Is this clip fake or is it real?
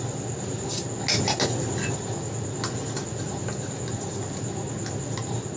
real